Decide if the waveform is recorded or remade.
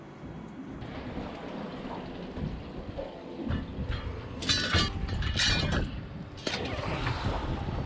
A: recorded